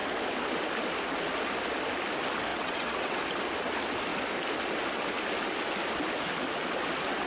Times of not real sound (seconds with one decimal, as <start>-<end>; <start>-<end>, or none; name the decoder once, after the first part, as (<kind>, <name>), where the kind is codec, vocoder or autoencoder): 2.5-3.2 (vocoder, WaveNeXt)